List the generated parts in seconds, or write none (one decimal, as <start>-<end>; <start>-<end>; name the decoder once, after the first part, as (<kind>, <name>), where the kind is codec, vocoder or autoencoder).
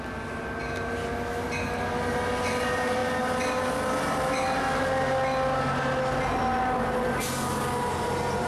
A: none